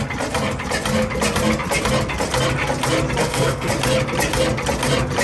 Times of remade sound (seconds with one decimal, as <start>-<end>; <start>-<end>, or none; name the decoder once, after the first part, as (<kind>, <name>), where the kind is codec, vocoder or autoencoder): 3.2-3.7 (codec, SNAC)